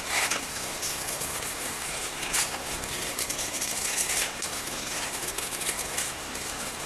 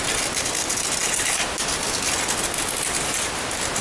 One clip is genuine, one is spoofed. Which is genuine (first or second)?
second